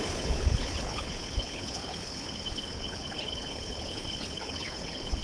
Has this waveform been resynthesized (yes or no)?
yes